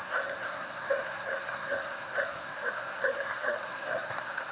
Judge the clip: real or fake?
fake